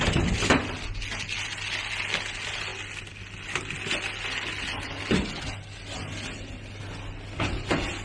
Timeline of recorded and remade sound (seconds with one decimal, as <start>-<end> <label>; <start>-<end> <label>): 0.0-8.0 recorded